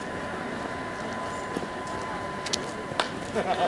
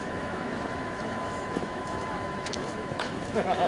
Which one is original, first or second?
first